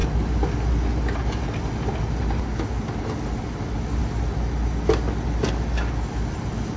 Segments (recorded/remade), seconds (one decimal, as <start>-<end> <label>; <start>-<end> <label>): 0.0-6.8 recorded